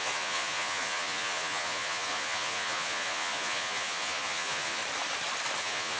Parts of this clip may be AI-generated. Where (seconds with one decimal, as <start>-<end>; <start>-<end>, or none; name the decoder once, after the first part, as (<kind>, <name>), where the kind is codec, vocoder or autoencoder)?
0.0-4.8 (vocoder, Vocos); 5.6-6.0